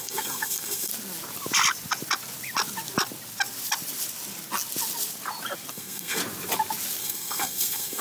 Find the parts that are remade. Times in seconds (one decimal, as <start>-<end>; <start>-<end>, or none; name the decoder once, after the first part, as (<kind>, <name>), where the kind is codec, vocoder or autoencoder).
0.0-0.9 (codec, SNAC); 5.7-6.2; 7.0-8.0